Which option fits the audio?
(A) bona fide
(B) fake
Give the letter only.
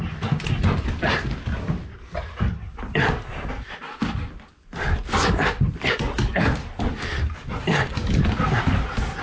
A